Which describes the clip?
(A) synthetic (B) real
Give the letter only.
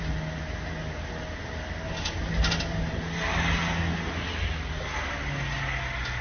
B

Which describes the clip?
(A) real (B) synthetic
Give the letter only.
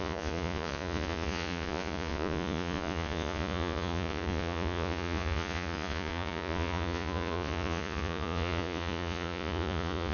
B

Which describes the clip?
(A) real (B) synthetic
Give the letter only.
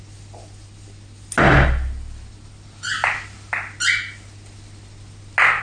A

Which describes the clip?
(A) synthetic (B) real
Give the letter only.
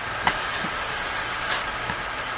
B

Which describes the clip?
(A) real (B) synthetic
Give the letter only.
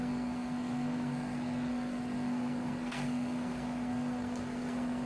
B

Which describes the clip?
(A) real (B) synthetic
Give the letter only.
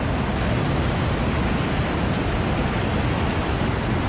A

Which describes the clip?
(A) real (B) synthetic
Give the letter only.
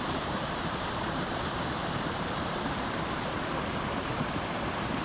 B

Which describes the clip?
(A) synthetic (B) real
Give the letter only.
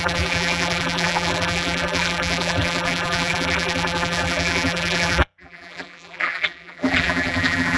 A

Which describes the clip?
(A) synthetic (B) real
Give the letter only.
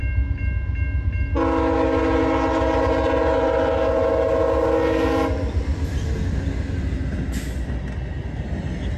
B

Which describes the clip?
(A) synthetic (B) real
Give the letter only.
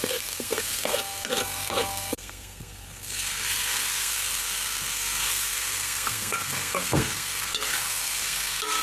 A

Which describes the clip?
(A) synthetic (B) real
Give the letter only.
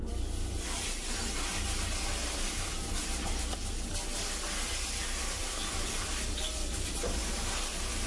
B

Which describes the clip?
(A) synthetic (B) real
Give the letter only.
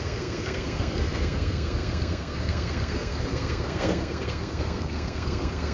A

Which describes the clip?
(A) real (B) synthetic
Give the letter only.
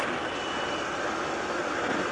A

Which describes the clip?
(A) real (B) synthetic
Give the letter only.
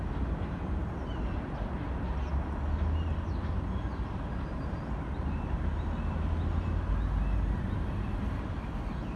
A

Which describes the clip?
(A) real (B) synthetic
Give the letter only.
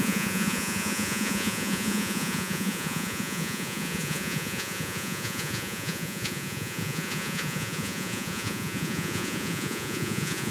B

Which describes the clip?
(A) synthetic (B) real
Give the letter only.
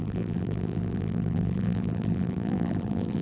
A